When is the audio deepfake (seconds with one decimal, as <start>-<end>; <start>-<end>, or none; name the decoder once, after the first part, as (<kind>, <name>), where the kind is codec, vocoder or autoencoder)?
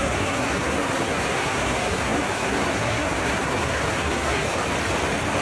0.0-4.6 (codec, SNAC)